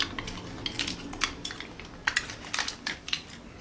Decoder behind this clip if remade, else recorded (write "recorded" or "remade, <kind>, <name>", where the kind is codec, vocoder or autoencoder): recorded